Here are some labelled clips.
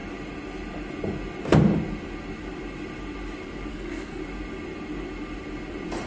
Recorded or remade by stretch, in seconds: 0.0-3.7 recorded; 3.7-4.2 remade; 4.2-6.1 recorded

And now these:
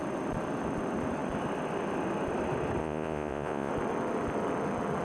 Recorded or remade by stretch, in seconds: 0.0-2.8 recorded; 2.8-3.7 remade; 3.7-5.0 recorded

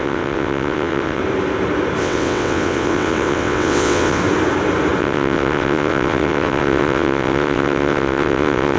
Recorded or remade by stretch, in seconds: 0.0-1.2 remade; 1.2-2.0 recorded; 2.0-4.2 remade; 4.2-5.0 recorded; 5.0-8.8 remade

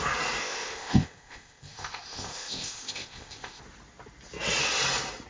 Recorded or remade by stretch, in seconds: 0.0-0.4 recorded; 0.4-3.6 remade; 3.6-5.3 recorded

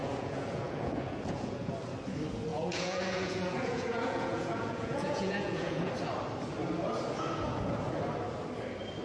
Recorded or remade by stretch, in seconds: 0.0-1.7 remade; 1.7-2.5 recorded; 2.5-5.9 remade; 5.9-9.0 recorded

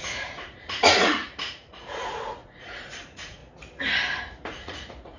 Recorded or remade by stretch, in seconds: 0.0-3.4 remade; 3.4-4.2 recorded; 4.2-5.2 remade

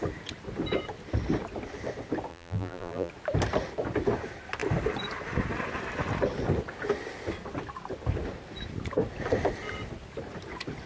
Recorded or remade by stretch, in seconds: 0.0-2.3 recorded; 2.3-3.1 remade; 3.1-10.9 recorded

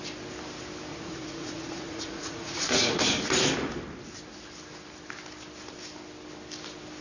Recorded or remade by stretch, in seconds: 0.0-0.9 recorded; 0.9-3.0 remade; 3.0-7.0 recorded